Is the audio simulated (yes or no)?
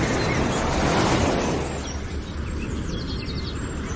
no